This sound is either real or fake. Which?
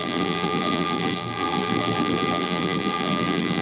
fake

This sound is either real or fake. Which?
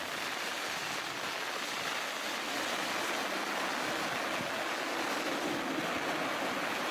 real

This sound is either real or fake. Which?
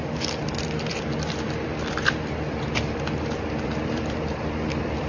fake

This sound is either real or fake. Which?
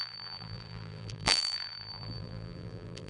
fake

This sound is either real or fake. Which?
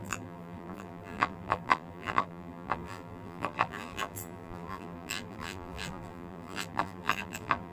fake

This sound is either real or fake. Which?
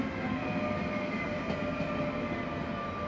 real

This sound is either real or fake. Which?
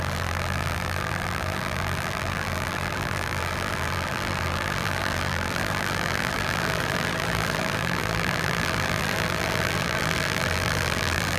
fake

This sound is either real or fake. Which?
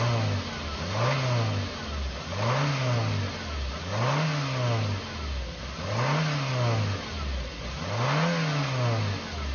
real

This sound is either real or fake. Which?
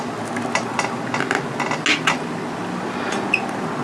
real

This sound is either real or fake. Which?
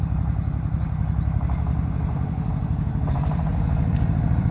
fake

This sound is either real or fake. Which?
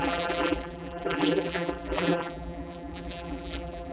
fake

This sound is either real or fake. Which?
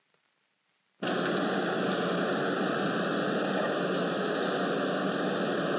real